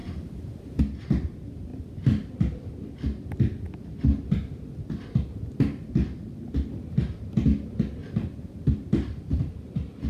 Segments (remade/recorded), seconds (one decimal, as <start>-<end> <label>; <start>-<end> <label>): 0.0-1.7 recorded; 1.7-2.7 remade; 2.7-8.0 recorded; 8.0-8.7 remade; 8.7-10.1 recorded